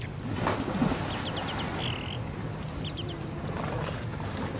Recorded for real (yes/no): yes